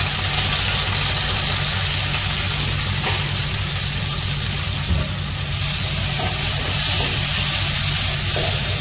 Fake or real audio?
real